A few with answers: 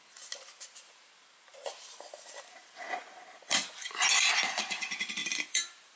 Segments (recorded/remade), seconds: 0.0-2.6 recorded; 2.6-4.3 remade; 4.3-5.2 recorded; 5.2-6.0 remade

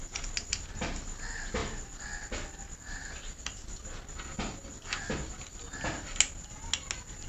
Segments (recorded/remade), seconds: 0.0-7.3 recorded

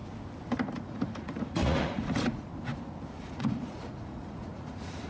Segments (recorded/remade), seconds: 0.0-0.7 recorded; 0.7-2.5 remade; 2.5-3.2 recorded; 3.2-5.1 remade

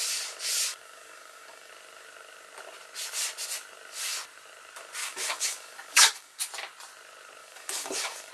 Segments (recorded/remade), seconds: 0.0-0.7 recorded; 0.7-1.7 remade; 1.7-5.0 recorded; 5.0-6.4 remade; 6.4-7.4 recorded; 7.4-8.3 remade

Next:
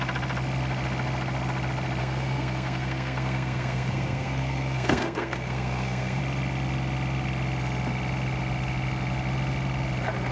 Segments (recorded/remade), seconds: 0.0-2.0 recorded; 2.0-6.2 remade; 6.2-10.3 recorded